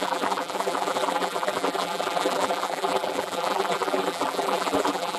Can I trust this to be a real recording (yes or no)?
no